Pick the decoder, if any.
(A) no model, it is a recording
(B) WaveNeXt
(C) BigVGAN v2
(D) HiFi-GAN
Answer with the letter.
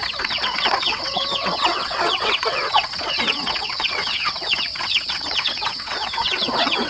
B